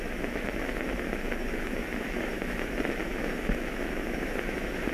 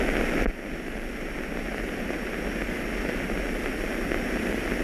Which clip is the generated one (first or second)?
first